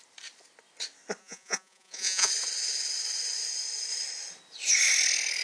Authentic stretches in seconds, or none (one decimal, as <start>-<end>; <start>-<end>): 0.0-1.2; 2.3-5.4